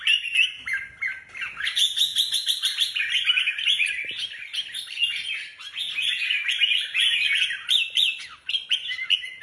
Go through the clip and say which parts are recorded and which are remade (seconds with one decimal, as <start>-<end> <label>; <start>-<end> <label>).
0.0-9.4 recorded